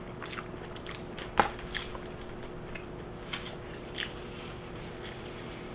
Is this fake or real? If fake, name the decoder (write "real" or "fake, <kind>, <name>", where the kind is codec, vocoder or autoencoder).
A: real